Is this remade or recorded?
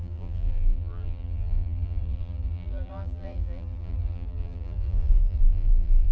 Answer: remade